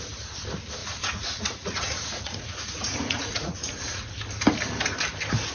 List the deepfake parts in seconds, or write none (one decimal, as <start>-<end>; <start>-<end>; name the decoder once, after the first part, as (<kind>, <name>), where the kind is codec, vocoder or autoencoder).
0.8-4.1 (vocoder, Vocos)